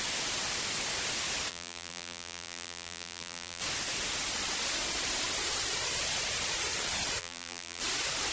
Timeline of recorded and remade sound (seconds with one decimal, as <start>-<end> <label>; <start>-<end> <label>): 0.0-1.5 recorded; 1.5-3.6 remade; 3.6-7.2 recorded; 7.2-7.8 remade; 7.8-8.3 recorded